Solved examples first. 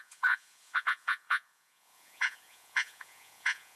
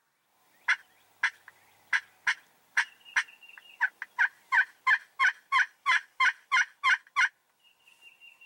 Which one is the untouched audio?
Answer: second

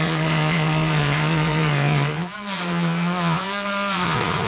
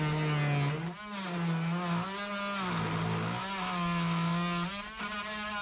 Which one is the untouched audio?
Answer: second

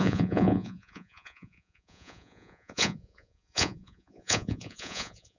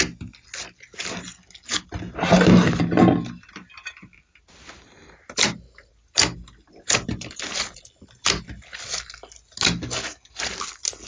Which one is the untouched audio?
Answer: second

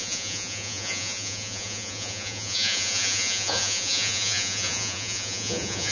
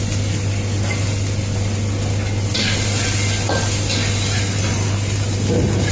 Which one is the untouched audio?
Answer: second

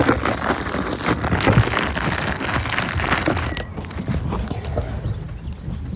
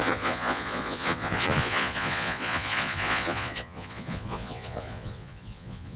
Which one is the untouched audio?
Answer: first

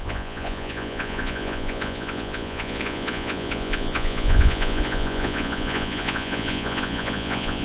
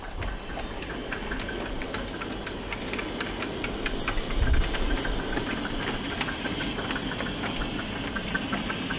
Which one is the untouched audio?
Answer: second